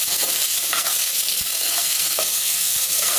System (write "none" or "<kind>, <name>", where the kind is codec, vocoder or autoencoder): codec, SNAC